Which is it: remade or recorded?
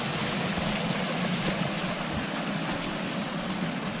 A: recorded